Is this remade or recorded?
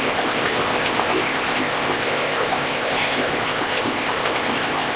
remade